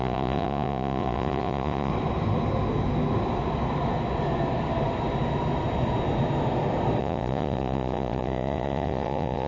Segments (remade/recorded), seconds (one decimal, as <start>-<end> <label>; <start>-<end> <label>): 0.0-1.9 remade; 1.9-7.0 recorded; 7.0-9.5 remade